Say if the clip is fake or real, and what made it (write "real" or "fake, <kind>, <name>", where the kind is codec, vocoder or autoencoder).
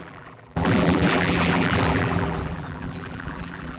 fake, vocoder, BigVGAN v2